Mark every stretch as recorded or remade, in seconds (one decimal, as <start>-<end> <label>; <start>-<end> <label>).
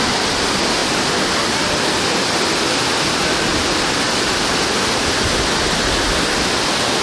0.0-0.8 recorded; 0.8-1.8 remade; 1.8-3.6 recorded; 3.6-5.3 remade; 5.3-7.0 recorded